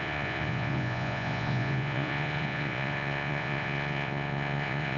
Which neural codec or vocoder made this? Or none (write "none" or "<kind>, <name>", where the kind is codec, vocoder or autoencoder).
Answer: vocoder, Vocos